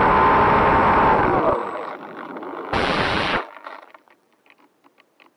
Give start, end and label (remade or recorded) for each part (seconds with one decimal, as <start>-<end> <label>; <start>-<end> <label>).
0.0-1.6 recorded; 1.6-4.4 remade; 4.4-5.4 recorded